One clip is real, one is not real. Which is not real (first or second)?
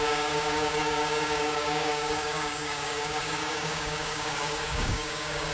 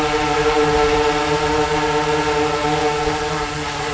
first